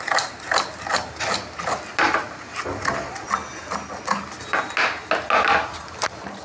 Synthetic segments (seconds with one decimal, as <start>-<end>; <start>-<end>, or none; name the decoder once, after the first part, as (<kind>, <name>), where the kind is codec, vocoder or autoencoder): none